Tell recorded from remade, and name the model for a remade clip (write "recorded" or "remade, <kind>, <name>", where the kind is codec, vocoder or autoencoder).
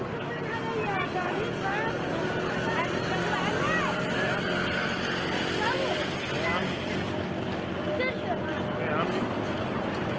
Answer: recorded